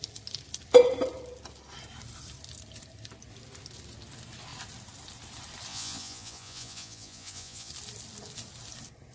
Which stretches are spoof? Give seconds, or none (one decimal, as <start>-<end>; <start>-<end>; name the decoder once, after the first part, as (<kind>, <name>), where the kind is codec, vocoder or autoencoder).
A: 5.7-7.7 (vocoder, Vocos)